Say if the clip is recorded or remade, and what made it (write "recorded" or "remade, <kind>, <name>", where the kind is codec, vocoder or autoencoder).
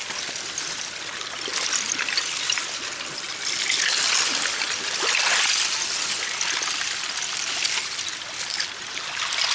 recorded